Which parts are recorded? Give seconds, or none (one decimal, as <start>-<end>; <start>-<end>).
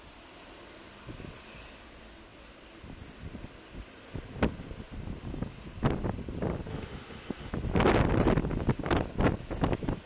0.0-6.7; 7.5-10.1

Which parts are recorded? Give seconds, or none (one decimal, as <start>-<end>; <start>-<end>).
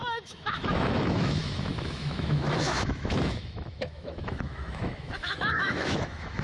none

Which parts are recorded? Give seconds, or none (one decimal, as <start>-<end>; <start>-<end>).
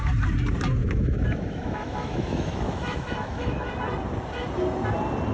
0.0-0.8; 3.7-5.3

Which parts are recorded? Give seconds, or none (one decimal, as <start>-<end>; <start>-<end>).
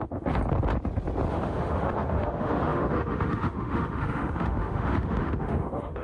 0.4-1.3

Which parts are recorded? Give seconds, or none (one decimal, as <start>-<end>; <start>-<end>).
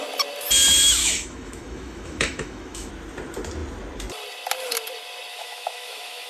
0.0-1.0; 2.9-5.3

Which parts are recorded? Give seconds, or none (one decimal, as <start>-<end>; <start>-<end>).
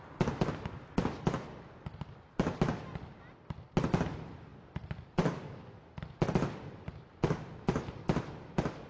0.0-8.9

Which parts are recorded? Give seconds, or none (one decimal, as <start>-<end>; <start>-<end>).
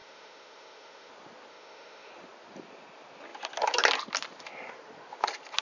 1.1-1.5; 2.1-5.6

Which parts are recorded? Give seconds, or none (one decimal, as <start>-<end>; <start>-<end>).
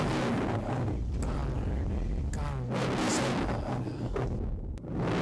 0.0-5.2